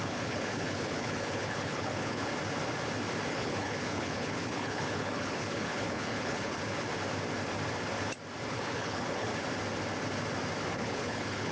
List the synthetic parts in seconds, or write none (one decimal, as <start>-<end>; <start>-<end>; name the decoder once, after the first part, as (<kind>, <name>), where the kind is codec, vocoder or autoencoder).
0.0-2.3 (codec, HILCodec); 3.3-6.8; 8.5-9.3; 10.7-11.5